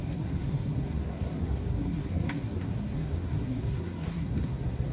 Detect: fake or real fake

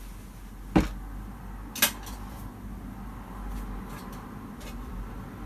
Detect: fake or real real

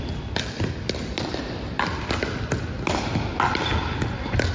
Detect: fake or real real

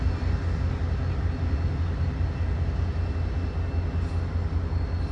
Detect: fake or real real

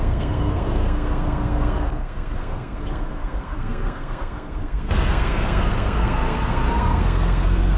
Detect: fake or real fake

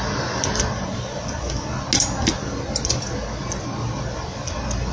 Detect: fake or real real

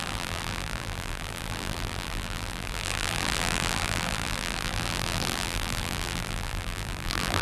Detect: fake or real fake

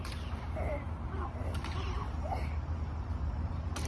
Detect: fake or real fake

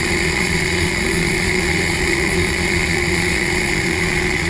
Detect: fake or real fake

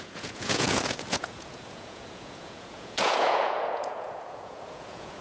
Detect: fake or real fake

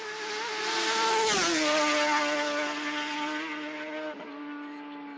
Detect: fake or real real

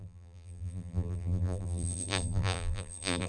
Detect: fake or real fake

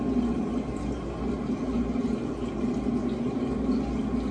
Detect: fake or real real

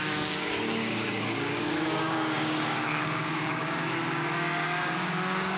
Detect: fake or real fake